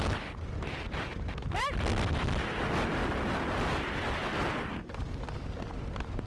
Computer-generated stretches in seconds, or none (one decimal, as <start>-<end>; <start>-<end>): none